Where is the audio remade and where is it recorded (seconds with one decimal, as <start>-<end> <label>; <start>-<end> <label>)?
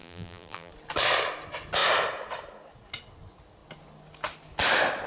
0.0-0.7 remade; 0.7-5.1 recorded